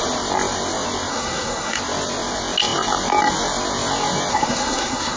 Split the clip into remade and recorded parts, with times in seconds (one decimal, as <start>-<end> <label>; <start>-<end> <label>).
0.0-1.1 recorded; 1.1-1.8 remade; 1.8-4.3 recorded; 4.3-5.2 remade